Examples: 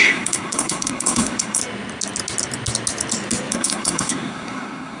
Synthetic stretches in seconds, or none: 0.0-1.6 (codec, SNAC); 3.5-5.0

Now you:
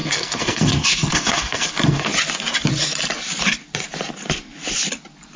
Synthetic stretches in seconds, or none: 0.0-2.1 (codec, SNAC)

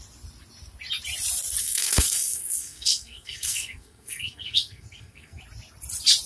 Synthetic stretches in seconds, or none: 1.6-5.4 (codec, SNAC)

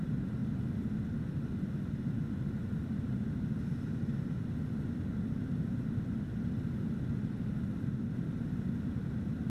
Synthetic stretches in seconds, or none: none